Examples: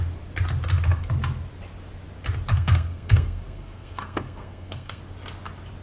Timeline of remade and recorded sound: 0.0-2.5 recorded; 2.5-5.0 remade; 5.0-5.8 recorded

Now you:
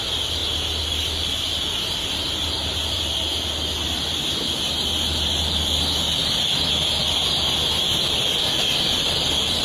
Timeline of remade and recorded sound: 0.0-0.4 remade; 0.4-2.3 recorded; 2.3-3.3 remade; 3.3-7.0 recorded; 7.0-9.6 remade